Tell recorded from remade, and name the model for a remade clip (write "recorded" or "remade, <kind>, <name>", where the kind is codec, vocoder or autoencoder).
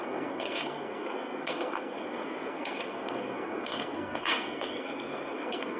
remade, codec, SNAC